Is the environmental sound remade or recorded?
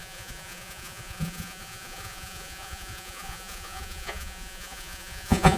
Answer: remade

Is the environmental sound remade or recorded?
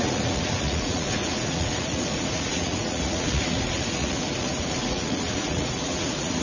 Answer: remade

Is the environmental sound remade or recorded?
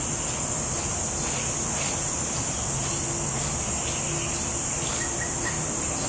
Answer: recorded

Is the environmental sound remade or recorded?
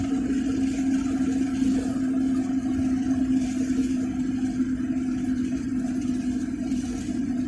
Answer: recorded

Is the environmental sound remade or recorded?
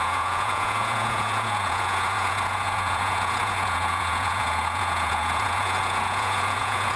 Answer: remade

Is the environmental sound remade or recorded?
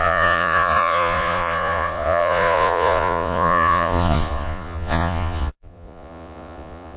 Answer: remade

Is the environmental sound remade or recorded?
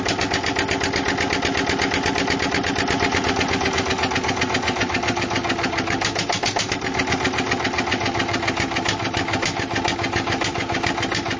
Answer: recorded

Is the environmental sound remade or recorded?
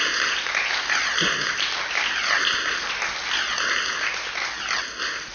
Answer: recorded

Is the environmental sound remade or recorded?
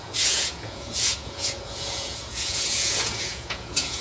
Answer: remade